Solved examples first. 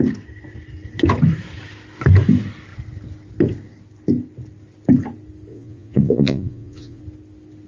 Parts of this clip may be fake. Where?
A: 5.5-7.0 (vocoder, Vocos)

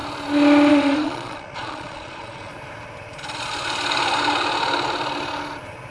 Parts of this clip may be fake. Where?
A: 0.7-2.5 (vocoder, Vocos)